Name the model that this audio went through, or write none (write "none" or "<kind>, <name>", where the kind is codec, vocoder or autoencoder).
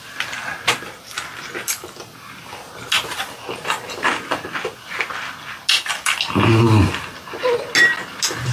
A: none